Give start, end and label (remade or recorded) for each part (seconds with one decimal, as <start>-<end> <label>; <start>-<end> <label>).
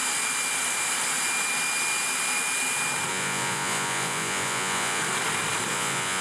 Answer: 0.0-3.1 recorded; 3.1-5.0 remade; 5.0-5.7 recorded; 5.7-6.2 remade